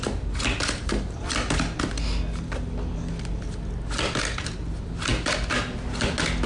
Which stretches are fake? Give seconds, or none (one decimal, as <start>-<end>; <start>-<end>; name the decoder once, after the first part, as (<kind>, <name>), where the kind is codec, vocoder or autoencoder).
none